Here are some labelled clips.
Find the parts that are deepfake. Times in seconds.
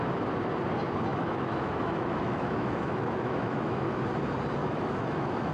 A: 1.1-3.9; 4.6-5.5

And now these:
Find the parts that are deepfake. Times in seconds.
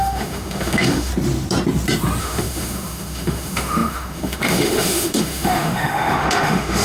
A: 0.0-1.1; 2.2-6.8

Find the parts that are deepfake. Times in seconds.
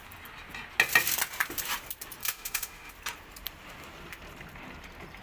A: 2.2-2.9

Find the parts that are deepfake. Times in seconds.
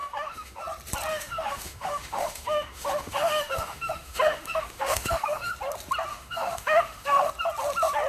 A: 0.0-0.6; 1.1-5.5; 6.1-7.3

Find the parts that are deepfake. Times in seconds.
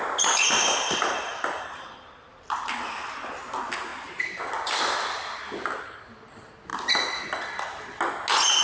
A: none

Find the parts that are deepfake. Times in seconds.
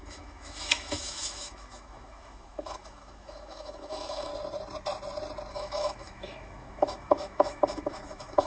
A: 0.0-4.3; 5.5-8.5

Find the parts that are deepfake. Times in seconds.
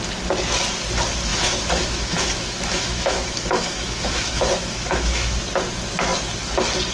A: 1.3-5.4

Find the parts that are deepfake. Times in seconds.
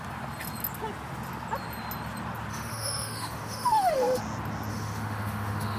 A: 2.5-4.2; 4.7-5.8